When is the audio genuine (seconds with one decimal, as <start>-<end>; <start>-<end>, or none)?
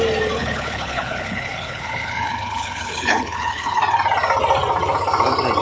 0.0-0.4; 3.8-5.6